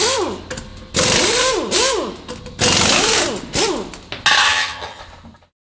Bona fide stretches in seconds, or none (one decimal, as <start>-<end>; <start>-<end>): 0.0-4.4; 5.0-5.6